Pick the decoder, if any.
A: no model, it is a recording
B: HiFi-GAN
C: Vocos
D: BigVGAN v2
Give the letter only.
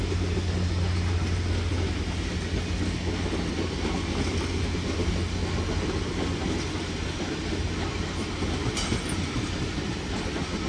A